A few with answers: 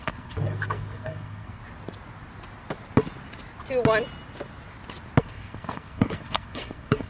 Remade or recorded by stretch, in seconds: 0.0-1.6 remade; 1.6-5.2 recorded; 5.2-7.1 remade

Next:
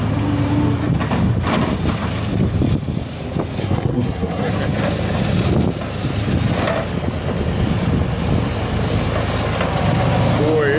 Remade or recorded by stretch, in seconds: 0.0-3.6 recorded; 3.6-4.5 remade; 4.5-10.8 recorded

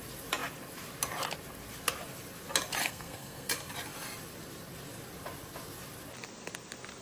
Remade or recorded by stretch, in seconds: 0.0-2.8 recorded; 2.8-3.5 remade; 3.5-7.0 recorded

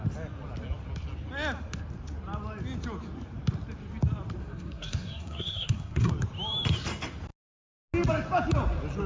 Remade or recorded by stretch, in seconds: 0.0-4.4 recorded; 4.4-6.1 remade; 6.1-9.1 recorded

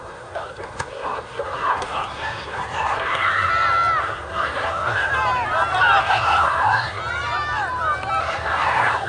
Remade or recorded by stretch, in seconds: 0.0-3.5 remade; 3.5-4.0 recorded; 4.0-5.1 remade; 5.1-6.0 recorded; 6.0-7.0 remade; 7.0-8.2 recorded; 8.2-9.1 remade